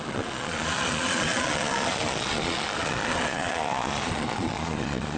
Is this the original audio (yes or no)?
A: no